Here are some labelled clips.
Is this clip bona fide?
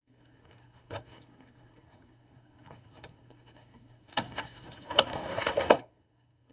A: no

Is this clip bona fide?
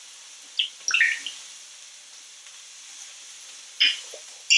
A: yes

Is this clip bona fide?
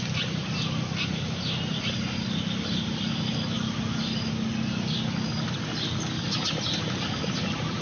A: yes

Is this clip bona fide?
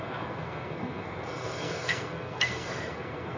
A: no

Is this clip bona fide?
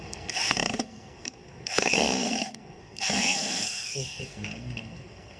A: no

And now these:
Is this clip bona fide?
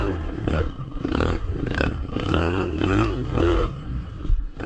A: no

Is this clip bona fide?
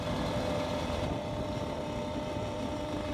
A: yes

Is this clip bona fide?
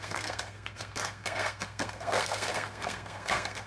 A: no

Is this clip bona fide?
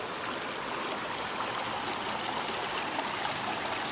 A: yes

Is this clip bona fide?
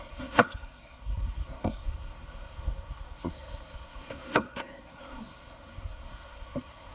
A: no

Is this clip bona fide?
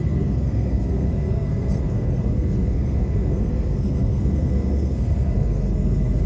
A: no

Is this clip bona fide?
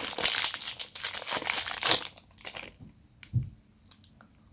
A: yes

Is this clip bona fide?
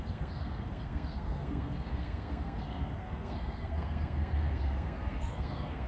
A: no